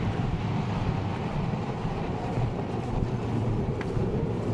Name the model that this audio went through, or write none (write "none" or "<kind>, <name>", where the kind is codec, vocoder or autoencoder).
none